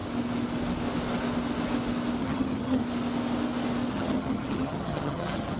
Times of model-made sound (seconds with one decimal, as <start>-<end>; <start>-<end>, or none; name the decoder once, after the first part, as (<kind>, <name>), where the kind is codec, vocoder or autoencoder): 2.2-2.8 (vocoder, HiFi-GAN); 3.9-5.6